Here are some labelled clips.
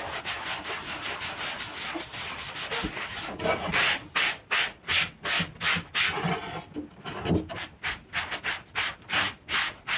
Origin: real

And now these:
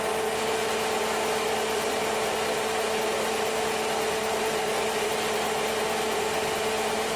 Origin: real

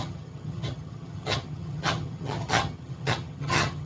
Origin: fake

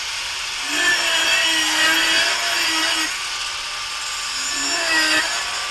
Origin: real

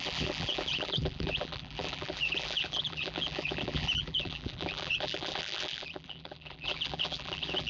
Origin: fake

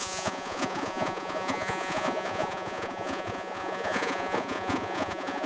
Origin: fake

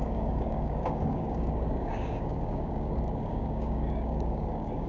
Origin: fake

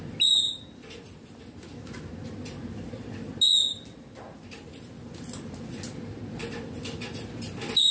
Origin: real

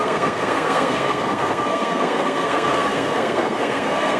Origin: fake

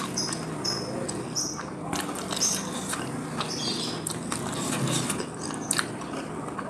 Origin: real